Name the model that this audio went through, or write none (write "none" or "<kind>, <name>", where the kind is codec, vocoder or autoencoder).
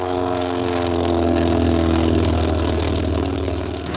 codec, SNAC